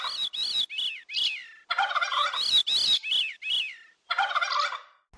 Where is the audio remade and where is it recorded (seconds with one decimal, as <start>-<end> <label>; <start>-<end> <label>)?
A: 0.0-5.2 recorded